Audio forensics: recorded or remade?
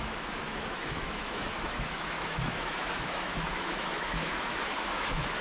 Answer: remade